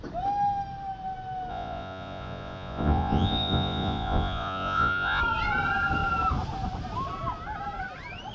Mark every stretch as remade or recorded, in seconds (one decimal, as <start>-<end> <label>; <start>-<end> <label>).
0.0-1.5 recorded; 1.5-5.2 remade; 5.2-8.3 recorded